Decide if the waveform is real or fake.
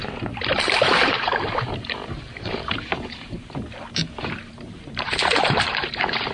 fake